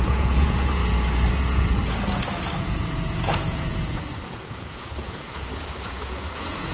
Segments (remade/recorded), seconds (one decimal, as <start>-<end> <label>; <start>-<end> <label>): 0.0-0.8 remade; 0.8-1.3 recorded; 1.3-1.8 remade; 1.8-2.6 recorded; 2.6-6.7 remade